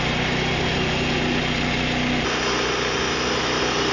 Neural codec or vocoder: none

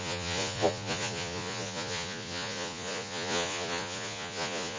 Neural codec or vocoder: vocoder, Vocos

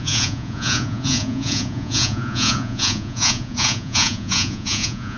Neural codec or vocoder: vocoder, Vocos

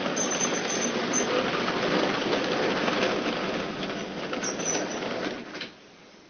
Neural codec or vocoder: none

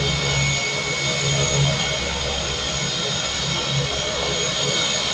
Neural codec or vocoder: none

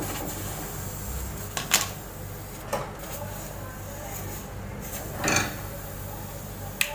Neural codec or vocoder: none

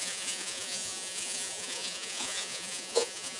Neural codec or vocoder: vocoder, Vocos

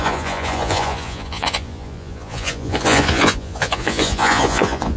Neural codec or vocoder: vocoder, Vocos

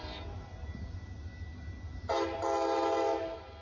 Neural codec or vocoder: none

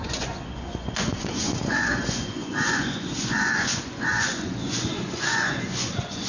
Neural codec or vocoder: vocoder, Vocos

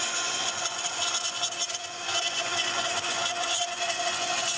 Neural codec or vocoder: vocoder, Vocos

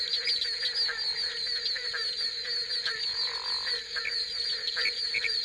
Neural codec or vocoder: none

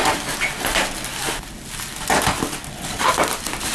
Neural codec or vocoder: none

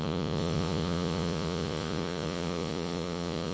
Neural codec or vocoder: vocoder, Vocos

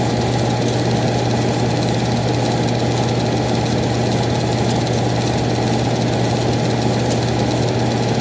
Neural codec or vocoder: none